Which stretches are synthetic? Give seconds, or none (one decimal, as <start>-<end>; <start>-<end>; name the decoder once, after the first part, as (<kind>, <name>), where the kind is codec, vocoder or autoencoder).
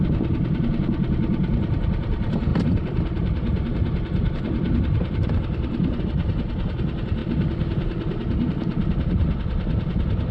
2.5-6.0 (vocoder, BigVGAN v2)